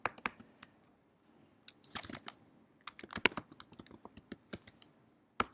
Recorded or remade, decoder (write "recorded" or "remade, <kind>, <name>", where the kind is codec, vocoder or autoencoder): recorded